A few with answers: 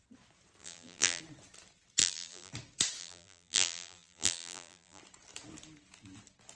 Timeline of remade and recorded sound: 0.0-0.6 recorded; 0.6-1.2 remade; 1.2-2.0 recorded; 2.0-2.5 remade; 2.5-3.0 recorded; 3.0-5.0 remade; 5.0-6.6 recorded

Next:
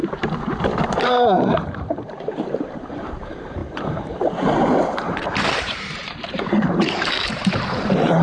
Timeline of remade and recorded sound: 0.0-8.2 remade

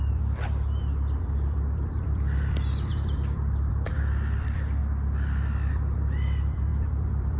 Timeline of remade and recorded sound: 0.0-4.8 remade; 4.8-5.7 recorded; 5.7-7.4 remade

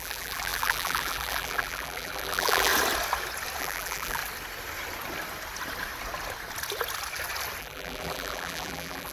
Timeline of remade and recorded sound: 0.0-2.7 remade; 2.7-3.6 recorded; 3.6-4.2 remade; 4.2-7.6 recorded; 7.6-9.1 remade

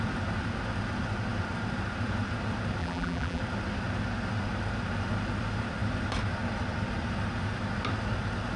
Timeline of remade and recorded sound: 0.0-2.8 recorded; 2.8-3.4 remade; 3.4-8.6 recorded

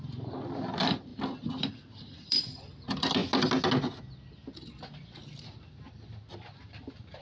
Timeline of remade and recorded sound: 0.0-3.2 remade; 3.2-6.7 recorded; 6.7-7.2 remade

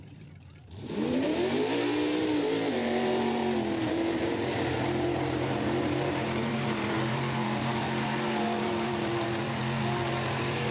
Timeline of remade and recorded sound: 0.0-3.4 remade; 3.4-3.9 recorded; 3.9-10.7 remade

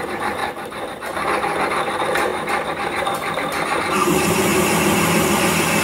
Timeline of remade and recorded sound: 0.0-0.4 remade; 0.4-1.7 recorded; 1.7-2.3 remade; 2.3-3.8 recorded; 3.8-4.5 remade; 4.5-5.8 recorded